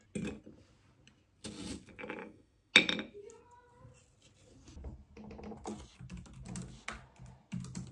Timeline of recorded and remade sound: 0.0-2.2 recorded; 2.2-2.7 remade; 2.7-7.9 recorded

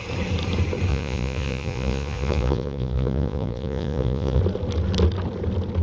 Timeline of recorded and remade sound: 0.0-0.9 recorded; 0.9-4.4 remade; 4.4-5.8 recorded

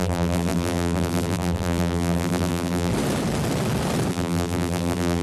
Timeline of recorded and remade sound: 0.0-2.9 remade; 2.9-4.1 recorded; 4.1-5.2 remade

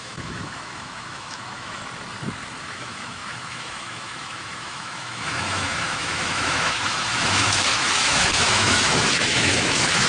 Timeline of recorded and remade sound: 0.0-1.8 remade; 1.8-2.6 recorded; 2.6-10.1 remade